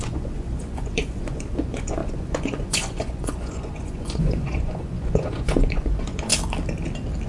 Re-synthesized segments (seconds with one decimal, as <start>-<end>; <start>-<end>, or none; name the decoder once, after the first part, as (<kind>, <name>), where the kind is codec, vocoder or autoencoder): 0.0-6.3 (vocoder, Vocos)